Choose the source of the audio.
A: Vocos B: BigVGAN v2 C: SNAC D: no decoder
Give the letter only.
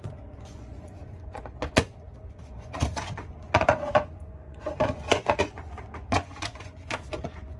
A